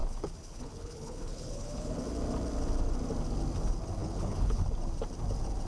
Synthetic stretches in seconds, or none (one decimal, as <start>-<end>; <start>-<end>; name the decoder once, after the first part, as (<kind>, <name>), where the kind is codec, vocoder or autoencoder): 0.0-1.9 (codec, HILCodec); 4.0-4.6